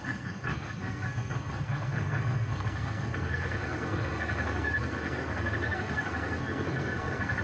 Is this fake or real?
fake